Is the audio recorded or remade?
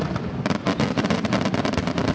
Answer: recorded